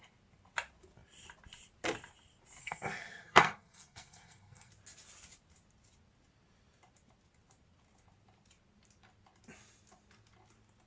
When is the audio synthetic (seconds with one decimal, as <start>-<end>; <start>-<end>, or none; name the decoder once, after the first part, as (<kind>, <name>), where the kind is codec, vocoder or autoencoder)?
2.6-4.7 (codec, SNAC)